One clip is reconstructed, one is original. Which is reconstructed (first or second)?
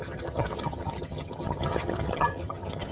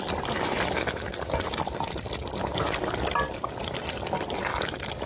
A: first